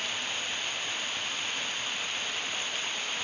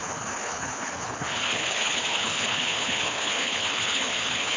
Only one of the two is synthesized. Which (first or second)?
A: second